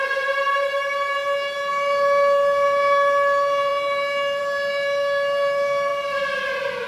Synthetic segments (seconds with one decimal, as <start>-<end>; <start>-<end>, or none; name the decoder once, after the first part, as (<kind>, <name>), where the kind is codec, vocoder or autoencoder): none